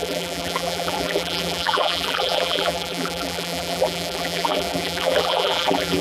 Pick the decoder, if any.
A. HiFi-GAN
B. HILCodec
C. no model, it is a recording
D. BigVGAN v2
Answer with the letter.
D